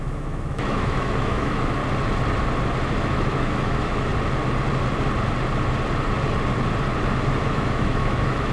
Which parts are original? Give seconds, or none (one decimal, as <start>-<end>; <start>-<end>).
1.8-3.0; 4.1-7.4